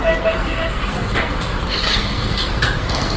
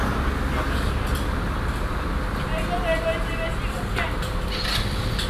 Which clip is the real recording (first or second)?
second